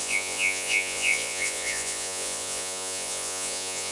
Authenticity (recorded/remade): remade